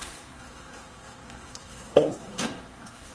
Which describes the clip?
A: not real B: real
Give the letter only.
A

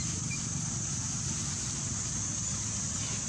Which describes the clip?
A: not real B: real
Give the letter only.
B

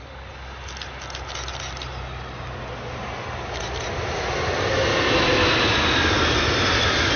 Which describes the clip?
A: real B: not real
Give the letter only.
A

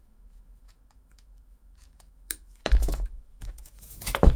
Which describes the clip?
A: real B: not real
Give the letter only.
B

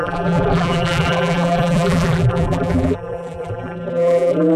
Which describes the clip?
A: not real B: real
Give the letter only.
A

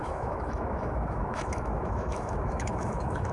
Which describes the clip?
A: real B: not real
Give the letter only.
B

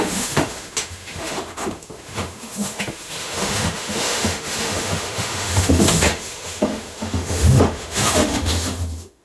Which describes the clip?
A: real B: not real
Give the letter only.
B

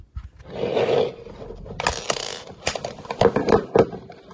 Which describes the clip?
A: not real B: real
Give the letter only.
B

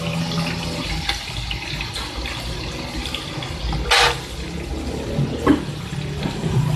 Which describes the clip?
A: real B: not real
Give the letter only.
A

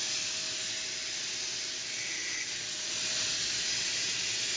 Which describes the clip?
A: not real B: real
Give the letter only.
B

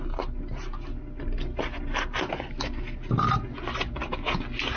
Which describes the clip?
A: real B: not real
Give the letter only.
A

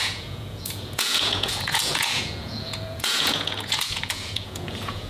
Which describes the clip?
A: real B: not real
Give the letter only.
B